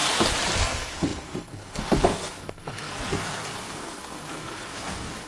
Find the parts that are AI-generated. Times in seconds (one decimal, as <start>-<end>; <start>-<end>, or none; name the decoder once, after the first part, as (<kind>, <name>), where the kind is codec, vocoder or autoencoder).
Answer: 0.6-5.3 (codec, SNAC)